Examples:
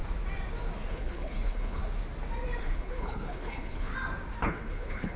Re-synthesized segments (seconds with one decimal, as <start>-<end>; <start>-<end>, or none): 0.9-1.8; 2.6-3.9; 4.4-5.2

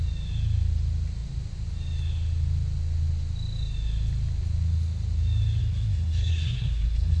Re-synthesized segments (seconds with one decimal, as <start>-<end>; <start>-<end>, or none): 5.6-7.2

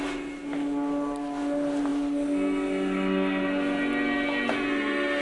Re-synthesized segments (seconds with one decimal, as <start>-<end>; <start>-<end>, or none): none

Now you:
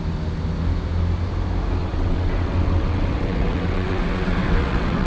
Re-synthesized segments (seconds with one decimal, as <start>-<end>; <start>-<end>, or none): 1.8-5.1